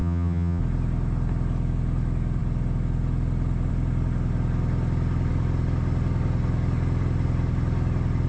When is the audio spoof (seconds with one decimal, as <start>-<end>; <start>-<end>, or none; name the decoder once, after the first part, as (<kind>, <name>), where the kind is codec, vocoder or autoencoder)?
0.0-0.6 (vocoder, HiFi-GAN)